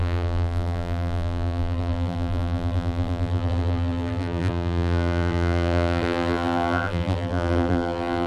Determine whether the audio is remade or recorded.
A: remade